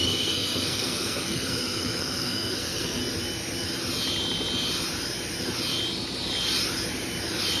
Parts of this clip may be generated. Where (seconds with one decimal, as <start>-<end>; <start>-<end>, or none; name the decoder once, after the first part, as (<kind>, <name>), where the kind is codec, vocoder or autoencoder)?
0.0-3.0 (codec, SNAC)